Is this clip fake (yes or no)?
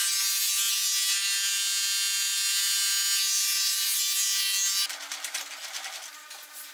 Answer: no